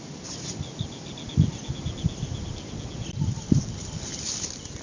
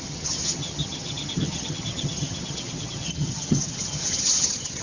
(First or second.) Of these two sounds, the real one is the first